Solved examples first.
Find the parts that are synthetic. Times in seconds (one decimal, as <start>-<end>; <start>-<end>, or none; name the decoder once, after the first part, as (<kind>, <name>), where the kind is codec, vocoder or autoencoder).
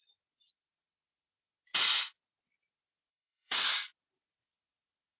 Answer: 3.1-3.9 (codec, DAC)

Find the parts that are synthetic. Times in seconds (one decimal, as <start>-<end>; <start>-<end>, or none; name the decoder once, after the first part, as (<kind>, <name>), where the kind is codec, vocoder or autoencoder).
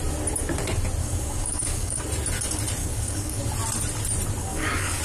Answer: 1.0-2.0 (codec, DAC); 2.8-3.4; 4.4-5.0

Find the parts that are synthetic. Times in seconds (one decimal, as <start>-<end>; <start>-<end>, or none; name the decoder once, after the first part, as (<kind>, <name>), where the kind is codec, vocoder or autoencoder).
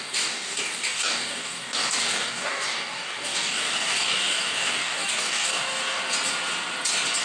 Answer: 0.0-6.0 (codec, DAC)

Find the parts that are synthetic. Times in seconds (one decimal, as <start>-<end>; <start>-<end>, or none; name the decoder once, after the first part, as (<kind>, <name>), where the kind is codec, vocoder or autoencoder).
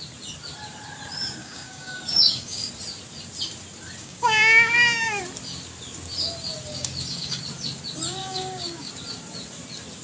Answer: 1.4-2.7 (codec, DAC); 4.0-5.2; 6.7-7.4; 8.2-8.9